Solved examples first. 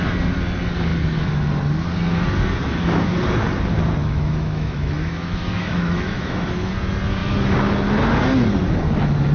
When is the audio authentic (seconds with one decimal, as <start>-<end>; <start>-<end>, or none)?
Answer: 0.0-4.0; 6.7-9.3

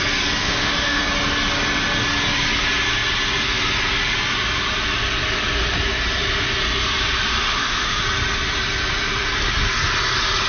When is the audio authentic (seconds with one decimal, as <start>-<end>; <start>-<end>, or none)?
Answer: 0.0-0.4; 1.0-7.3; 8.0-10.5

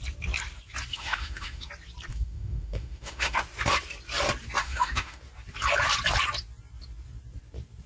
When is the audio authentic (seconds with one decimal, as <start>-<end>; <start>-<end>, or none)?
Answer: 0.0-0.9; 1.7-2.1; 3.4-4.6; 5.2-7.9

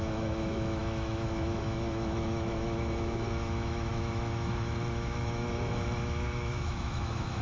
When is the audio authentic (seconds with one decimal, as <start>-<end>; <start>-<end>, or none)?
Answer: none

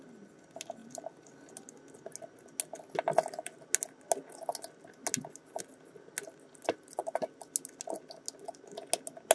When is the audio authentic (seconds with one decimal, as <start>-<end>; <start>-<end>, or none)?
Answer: 0.0-9.3

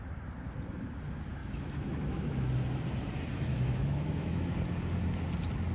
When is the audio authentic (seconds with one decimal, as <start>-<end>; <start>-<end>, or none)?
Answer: 0.0-1.4; 2.5-3.5; 4.4-5.7

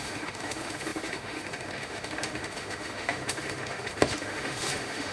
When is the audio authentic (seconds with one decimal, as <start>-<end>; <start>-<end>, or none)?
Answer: none

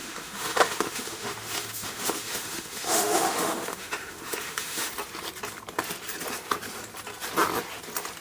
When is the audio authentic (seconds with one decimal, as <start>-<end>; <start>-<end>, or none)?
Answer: 4.9-8.2